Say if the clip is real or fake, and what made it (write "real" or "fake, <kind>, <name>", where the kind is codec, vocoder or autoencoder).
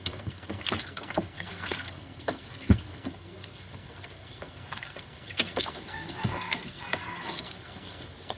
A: fake, codec, SNAC